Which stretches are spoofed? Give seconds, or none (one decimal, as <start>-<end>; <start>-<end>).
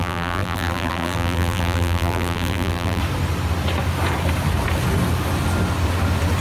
0.0-3.0